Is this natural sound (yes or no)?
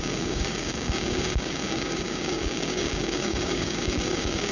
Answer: no